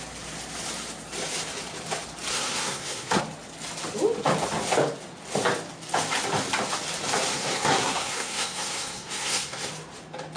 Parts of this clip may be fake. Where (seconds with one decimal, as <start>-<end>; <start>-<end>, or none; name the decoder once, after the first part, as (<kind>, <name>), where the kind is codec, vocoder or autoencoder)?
2.3-3.2 (codec, SNAC); 7.3-9.7